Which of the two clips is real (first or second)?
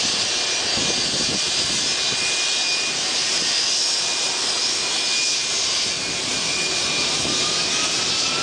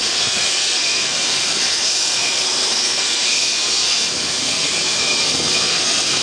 first